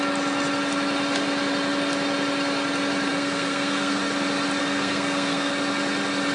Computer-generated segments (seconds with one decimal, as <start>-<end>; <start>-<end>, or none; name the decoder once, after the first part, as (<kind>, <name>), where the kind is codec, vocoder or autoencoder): 3.1-4.0 (codec, SNAC); 4.6-5.5